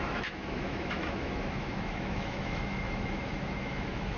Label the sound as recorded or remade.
remade